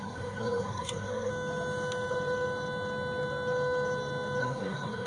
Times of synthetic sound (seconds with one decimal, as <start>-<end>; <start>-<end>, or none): 0.0-1.3; 4.4-5.1